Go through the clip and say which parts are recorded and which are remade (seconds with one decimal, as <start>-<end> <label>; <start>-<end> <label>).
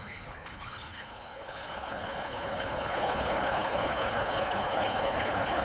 0.0-5.6 remade